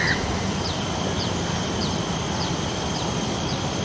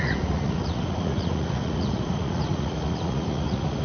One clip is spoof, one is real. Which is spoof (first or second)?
second